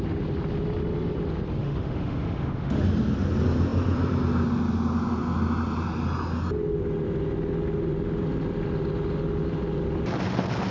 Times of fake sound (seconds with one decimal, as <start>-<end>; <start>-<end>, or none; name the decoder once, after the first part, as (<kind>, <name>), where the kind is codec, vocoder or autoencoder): 1.6-2.8 (autoencoder, DAC-VAE)